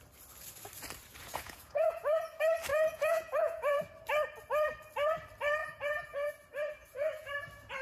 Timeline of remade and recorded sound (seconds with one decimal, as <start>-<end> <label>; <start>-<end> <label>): 0.0-1.2 recorded; 1.2-2.0 remade; 2.0-2.7 recorded; 2.7-3.8 remade; 3.8-5.6 recorded; 5.6-6.3 remade; 6.3-6.8 recorded; 6.8-7.3 remade; 7.3-7.8 recorded